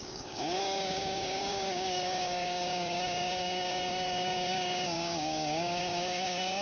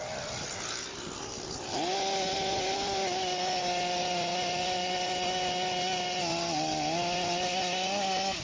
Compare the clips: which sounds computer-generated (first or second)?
first